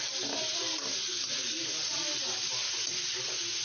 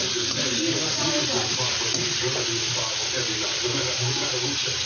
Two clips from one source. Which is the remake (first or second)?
second